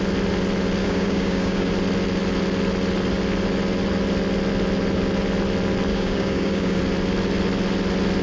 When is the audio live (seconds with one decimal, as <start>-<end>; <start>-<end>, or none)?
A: 0.0-0.8; 1.7-5.9; 6.8-8.2

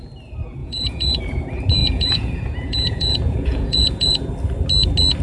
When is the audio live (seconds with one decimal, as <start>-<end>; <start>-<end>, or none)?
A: 0.0-0.6; 1.2-1.8; 4.3-5.2

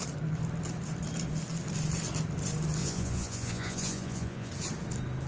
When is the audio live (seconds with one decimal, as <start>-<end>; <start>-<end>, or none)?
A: 0.0-2.8; 4.5-5.3

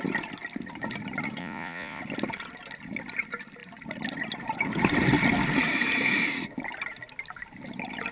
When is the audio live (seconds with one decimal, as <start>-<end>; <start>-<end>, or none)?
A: 0.0-1.4; 2.0-8.1

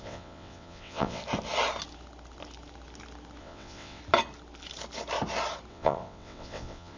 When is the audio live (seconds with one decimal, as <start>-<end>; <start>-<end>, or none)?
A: 1.2-3.4; 4.0-5.7